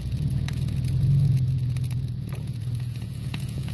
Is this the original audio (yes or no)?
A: no